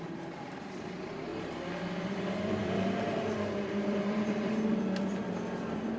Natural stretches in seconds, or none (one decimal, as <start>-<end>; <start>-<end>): 1.3-2.0